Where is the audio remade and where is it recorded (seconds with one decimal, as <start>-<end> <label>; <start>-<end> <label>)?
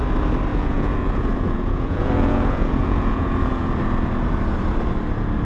0.0-0.5 recorded; 0.5-3.7 remade; 3.7-5.4 recorded